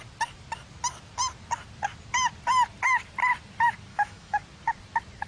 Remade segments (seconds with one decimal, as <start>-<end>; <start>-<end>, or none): 3.9-4.4